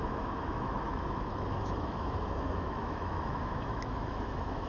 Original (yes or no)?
no